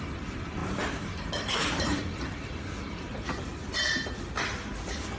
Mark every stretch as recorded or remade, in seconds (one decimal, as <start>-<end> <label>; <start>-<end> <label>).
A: 0.0-3.5 remade; 3.5-5.2 recorded